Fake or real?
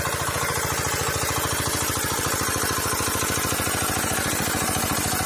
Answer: real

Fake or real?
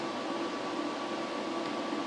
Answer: real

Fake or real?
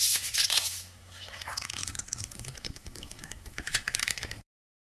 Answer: fake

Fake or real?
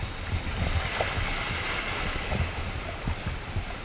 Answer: real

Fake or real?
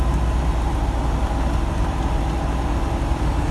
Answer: real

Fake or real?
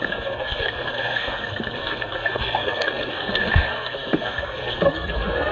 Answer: fake